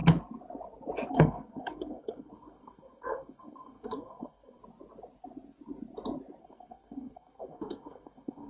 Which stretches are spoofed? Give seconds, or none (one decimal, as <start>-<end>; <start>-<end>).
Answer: 1.1-4.6; 6.4-8.5